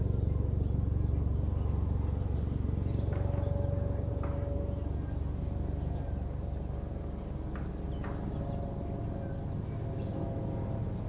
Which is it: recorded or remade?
recorded